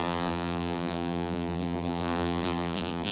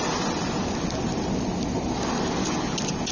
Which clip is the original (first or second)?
second